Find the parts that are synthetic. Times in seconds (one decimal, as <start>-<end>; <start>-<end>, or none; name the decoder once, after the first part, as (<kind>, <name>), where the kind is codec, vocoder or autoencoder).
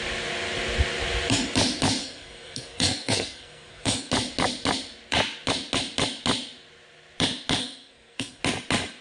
2.0-4.1 (codec, SNAC); 7.6-8.4